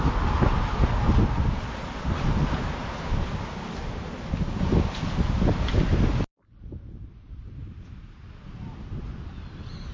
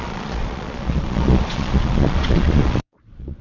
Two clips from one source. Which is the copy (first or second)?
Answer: second